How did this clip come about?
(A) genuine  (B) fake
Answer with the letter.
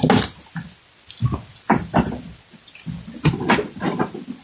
A